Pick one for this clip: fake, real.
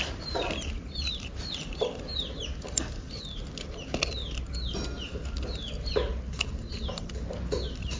real